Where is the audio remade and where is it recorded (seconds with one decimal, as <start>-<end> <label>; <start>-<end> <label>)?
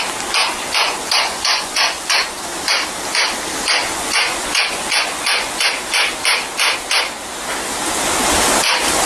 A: 0.0-0.4 recorded; 0.4-2.4 remade; 2.4-3.9 recorded; 3.9-5.7 remade; 5.7-9.1 recorded